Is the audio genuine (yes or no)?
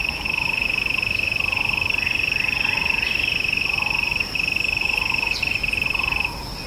yes